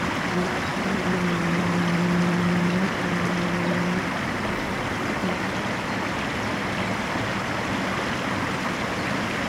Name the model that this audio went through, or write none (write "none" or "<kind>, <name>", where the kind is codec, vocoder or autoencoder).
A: none